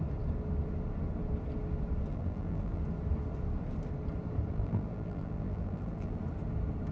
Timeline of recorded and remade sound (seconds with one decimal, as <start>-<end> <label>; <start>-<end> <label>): 0.0-2.1 recorded; 2.1-2.8 remade; 2.8-4.5 recorded; 4.5-6.2 remade; 6.2-6.9 recorded